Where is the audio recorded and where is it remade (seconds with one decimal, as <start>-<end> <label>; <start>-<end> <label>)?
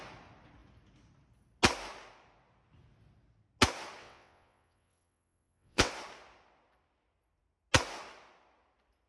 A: 0.0-4.0 recorded; 4.0-5.9 remade; 5.9-9.1 recorded